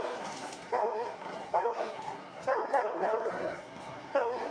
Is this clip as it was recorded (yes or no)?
no